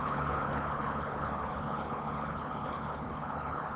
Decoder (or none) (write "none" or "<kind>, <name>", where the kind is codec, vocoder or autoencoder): codec, HILCodec